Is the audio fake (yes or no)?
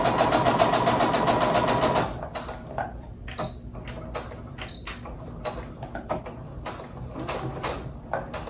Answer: no